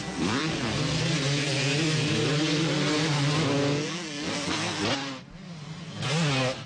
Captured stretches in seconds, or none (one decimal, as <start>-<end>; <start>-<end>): 0.0-6.7